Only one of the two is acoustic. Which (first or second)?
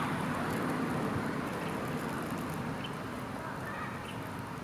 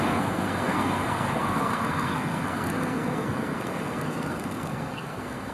first